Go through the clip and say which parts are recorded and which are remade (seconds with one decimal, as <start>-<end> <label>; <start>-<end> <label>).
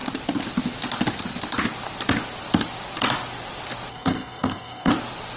0.0-3.9 recorded; 3.9-4.9 remade; 4.9-5.4 recorded